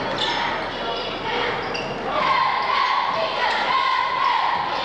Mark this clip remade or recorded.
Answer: recorded